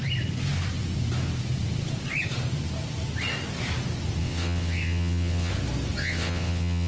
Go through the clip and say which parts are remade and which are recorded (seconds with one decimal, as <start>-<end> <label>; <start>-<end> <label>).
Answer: 0.0-4.2 recorded; 4.2-5.5 remade; 5.5-6.0 recorded; 6.0-6.9 remade